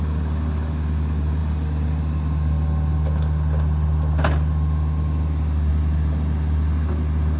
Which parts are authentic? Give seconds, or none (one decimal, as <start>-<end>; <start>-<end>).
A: 0.0-7.4